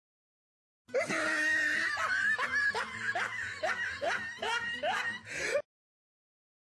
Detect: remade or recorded recorded